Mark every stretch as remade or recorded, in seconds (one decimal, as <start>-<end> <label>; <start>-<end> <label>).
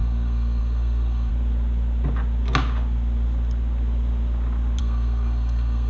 0.0-1.3 remade; 1.3-4.8 recorded; 4.8-5.9 remade